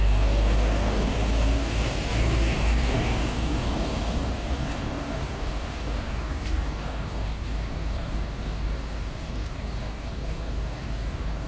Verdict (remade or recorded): remade